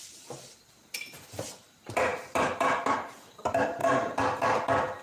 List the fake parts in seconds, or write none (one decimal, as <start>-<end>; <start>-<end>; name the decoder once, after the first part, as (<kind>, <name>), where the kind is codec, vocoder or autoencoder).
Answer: none